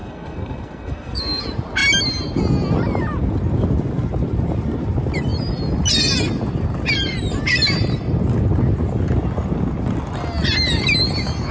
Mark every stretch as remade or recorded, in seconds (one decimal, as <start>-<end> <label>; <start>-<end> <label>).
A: 0.0-1.4 remade; 1.4-11.5 recorded